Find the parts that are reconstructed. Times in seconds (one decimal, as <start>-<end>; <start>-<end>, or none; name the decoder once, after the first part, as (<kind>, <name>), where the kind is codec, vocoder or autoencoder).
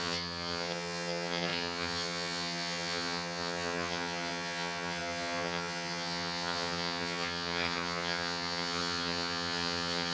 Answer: 0.0-10.1 (vocoder, HiFi-GAN)